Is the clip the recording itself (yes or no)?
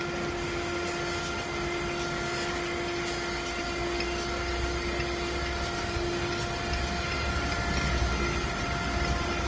yes